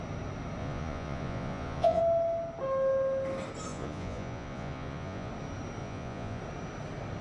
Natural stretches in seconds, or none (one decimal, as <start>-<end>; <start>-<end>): 0.0-0.6; 2.0-3.7; 5.3-5.8; 6.4-7.2